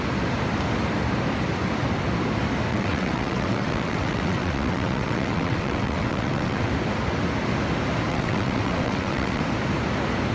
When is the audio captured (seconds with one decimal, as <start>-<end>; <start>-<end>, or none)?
0.0-2.7; 6.7-8.1; 9.4-10.3